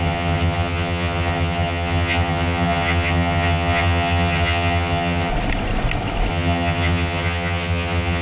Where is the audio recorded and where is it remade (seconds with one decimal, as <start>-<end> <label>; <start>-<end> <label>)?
0.0-5.3 remade; 5.3-6.3 recorded; 6.3-8.2 remade